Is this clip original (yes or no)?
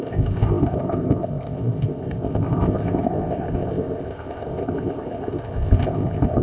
no